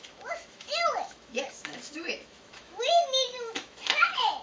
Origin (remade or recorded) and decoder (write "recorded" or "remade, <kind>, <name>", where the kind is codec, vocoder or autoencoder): remade, autoencoder, DAC-VAE